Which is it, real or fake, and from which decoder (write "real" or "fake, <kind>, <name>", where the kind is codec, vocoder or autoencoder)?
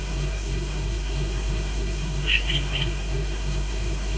fake, codec, SNAC